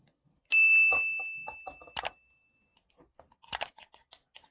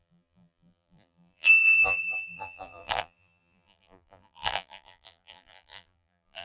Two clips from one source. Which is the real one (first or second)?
first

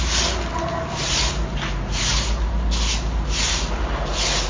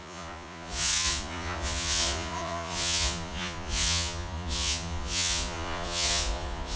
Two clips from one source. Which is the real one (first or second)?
first